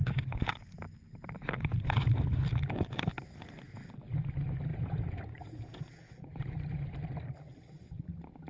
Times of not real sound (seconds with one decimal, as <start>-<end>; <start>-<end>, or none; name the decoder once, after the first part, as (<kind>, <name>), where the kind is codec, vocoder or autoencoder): 4.7-6.5 (vocoder, Vocos)

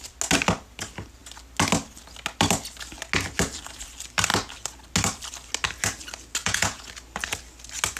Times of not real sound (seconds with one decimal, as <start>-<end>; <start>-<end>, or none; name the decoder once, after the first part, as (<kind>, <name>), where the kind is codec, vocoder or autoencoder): 6.4-6.9 (vocoder, Vocos)

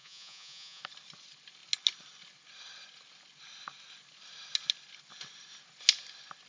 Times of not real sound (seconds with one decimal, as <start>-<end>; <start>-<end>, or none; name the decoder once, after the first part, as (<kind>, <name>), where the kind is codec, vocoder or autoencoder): 0.0-0.8 (vocoder, Vocos)

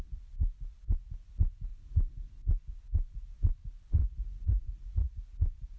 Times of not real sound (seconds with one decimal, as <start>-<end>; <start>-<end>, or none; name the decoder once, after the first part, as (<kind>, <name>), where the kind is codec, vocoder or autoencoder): 4.0-5.2 (vocoder, Vocos)

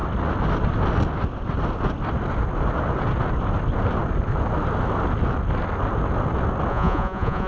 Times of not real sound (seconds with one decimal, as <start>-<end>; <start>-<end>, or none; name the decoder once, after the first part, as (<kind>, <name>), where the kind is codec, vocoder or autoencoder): 6.7-7.5 (vocoder, Vocos)

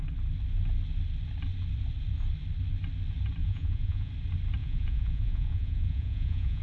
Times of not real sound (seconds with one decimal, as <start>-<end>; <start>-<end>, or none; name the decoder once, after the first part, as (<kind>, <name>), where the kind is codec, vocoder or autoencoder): 3.4-4.1 (vocoder, Vocos); 4.6-6.6